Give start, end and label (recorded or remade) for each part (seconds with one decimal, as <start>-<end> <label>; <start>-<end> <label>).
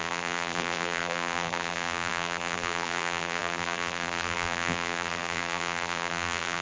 0.0-6.6 remade